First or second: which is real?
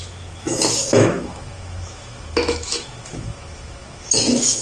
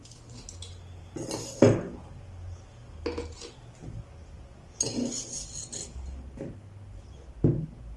second